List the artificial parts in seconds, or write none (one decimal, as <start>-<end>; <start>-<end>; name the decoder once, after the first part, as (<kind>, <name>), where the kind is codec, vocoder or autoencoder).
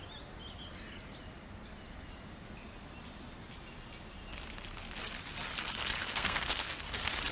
6.0-6.8 (codec, SNAC)